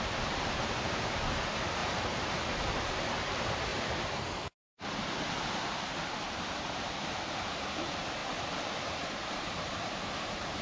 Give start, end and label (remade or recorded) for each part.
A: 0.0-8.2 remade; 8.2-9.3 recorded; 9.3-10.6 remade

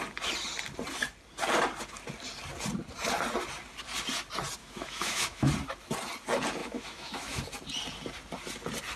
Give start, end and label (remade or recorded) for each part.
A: 0.0-4.6 recorded; 4.6-5.5 remade; 5.5-6.6 recorded; 6.6-7.4 remade; 7.4-9.0 recorded

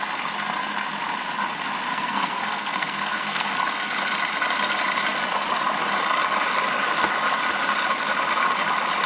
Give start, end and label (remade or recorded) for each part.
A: 0.0-1.9 recorded; 1.9-3.5 remade; 3.5-9.1 recorded

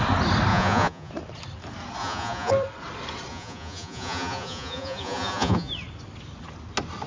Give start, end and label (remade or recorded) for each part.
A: 0.0-0.5 recorded; 0.5-1.1 remade; 1.1-2.0 recorded; 2.0-2.5 remade; 2.5-3.3 recorded; 3.3-5.7 remade; 5.7-7.1 recorded

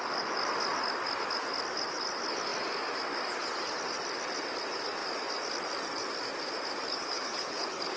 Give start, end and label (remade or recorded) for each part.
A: 0.0-7.0 recorded; 7.0-8.0 remade

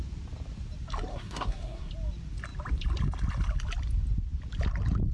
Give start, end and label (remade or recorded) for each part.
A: 0.0-1.1 recorded; 1.1-1.9 remade; 1.9-5.1 recorded

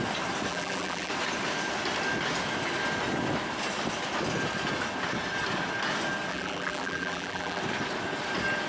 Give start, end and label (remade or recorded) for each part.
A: 0.0-0.5 recorded; 0.5-1.1 remade; 1.1-6.3 recorded; 6.3-7.6 remade; 7.6-8.7 recorded

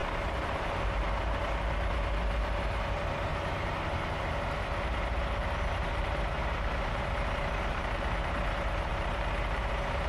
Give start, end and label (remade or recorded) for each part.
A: 0.0-1.6 remade; 1.6-3.3 recorded; 3.3-4.4 remade; 4.4-5.4 recorded; 5.4-10.1 remade